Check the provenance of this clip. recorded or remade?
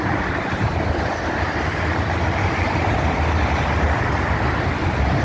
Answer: recorded